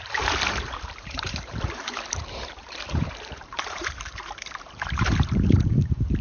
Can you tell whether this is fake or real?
fake